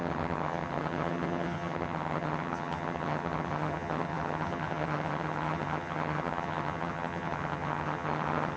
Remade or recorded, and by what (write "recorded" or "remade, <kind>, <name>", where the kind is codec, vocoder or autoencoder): remade, vocoder, HiFi-GAN